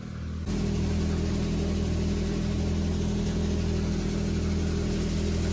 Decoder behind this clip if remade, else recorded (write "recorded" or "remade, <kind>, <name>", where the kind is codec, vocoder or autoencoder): recorded